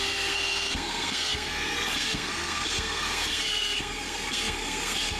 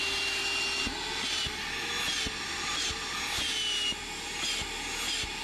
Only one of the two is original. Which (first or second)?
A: second